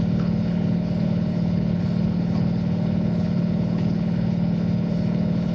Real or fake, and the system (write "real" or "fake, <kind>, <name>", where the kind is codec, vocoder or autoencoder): fake, codec, HILCodec